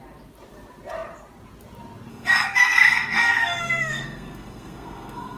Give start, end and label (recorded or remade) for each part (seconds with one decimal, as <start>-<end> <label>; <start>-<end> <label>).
0.0-2.1 recorded; 2.1-5.4 remade